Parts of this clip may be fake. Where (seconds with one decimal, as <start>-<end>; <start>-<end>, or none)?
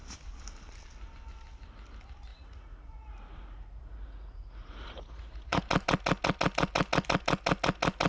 2.3-5.6